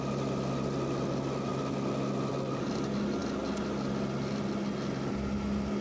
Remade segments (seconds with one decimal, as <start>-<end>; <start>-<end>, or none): none